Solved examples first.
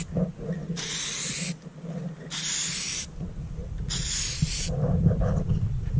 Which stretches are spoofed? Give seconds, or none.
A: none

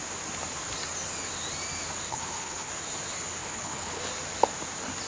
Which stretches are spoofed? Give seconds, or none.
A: 2.1-2.7 (codec, HILCodec); 3.4-4.0